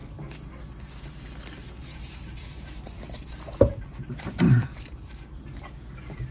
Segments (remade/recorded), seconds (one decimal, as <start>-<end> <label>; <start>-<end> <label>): 0.0-1.8 recorded; 1.8-5.6 remade; 5.6-6.3 recorded